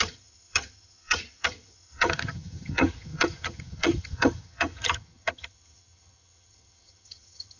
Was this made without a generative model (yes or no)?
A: no